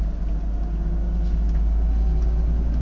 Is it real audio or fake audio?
real